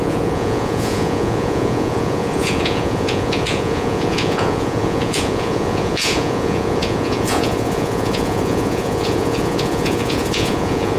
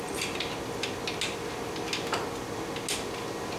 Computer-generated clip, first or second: first